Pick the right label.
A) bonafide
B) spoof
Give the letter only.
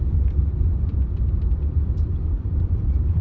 B